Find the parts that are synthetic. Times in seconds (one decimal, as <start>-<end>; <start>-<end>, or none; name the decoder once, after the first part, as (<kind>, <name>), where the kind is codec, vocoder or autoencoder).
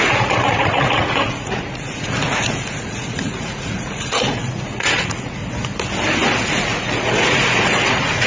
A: 0.0-5.4 (vocoder, Vocos); 6.5-8.3